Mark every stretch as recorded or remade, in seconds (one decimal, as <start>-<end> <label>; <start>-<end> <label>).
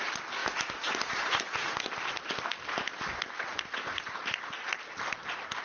0.0-5.6 recorded